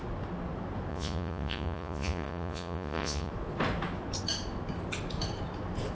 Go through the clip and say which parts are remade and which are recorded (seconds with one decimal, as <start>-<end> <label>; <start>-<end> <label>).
0.0-0.9 recorded; 0.9-3.3 remade; 3.3-5.9 recorded

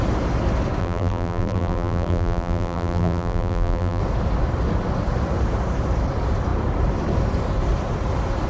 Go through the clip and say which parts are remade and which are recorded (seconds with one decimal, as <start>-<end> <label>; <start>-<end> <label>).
0.0-0.8 recorded; 0.8-4.0 remade; 4.0-8.5 recorded